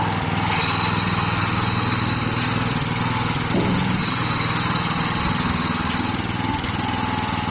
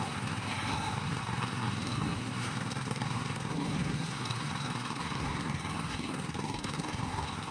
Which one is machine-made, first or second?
second